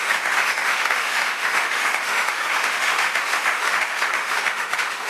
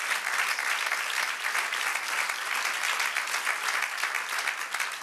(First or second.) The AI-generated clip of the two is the first